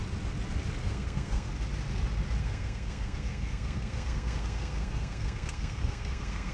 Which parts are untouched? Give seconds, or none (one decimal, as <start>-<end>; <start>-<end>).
0.0-0.8; 1.5-2.4